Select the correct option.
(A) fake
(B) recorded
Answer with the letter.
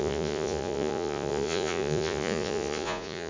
A